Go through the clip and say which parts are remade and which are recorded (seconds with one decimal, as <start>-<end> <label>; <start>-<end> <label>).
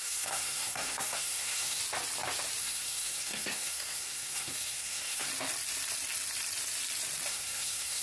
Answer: 0.0-1.8 remade; 1.8-2.6 recorded; 2.6-5.3 remade; 5.3-7.3 recorded; 7.3-8.0 remade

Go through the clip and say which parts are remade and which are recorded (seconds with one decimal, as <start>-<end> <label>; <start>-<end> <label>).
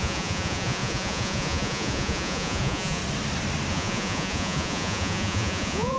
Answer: 0.0-3.0 remade; 3.0-3.7 recorded; 3.7-6.0 remade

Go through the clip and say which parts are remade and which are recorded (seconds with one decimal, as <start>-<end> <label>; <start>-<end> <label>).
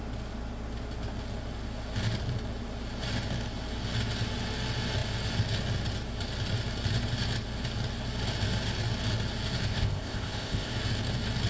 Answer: 0.0-9.7 recorded; 9.7-10.7 remade; 10.7-11.5 recorded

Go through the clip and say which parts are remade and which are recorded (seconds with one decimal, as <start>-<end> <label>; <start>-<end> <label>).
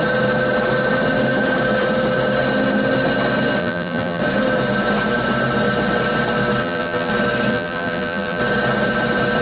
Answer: 0.0-3.6 recorded; 3.6-4.2 remade; 4.2-6.6 recorded; 6.6-7.1 remade; 7.1-7.5 recorded; 7.5-8.4 remade; 8.4-9.4 recorded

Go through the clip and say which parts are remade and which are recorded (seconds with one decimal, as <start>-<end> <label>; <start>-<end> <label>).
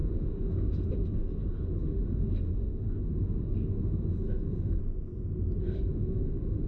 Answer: 0.0-4.8 remade; 4.8-5.6 recorded; 5.6-6.7 remade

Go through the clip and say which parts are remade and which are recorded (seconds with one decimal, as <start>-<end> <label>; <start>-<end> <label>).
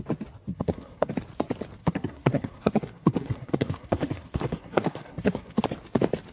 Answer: 0.0-0.5 recorded; 0.5-1.1 remade; 1.1-1.8 recorded; 1.8-5.6 remade; 5.6-6.3 recorded